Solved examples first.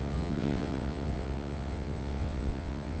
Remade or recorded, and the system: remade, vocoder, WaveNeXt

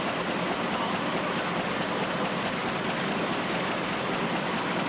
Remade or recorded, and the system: recorded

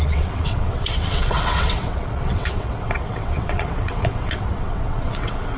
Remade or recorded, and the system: remade, vocoder, WaveNeXt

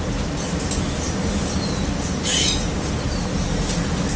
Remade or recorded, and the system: recorded